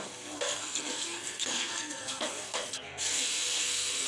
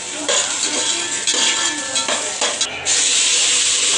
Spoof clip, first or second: first